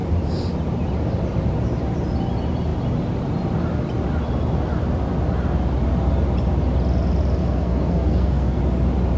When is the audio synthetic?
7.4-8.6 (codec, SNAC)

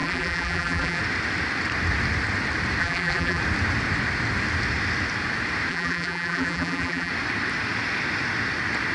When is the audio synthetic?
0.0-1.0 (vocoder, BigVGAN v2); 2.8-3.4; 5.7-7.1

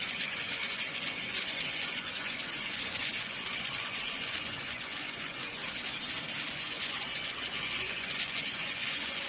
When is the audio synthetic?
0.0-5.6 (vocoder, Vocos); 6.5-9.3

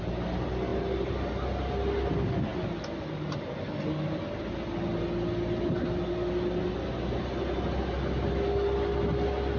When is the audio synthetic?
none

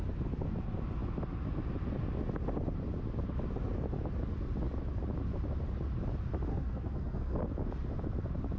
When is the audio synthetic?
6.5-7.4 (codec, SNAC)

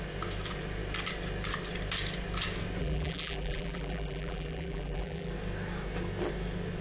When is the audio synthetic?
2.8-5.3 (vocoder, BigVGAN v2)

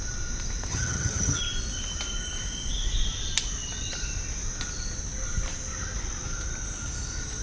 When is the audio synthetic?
0.7-1.4 (vocoder, HiFi-GAN)

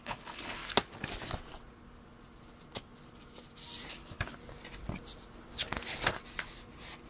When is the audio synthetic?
0.0-0.6 (codec, HILCodec); 3.9-4.4